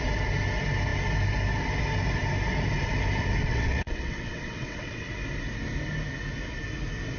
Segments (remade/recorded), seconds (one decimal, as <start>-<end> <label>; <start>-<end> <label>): 0.0-3.4 recorded; 3.4-5.1 remade; 5.1-7.2 recorded